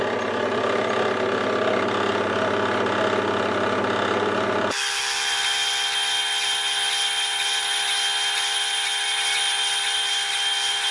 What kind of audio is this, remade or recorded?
recorded